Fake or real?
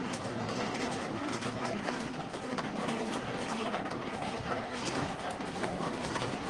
fake